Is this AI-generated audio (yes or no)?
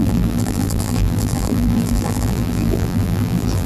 yes